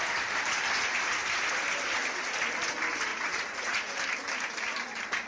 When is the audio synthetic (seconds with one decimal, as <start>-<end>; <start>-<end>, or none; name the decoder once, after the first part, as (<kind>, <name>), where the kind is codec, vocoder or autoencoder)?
3.1-3.9 (vocoder, Vocos)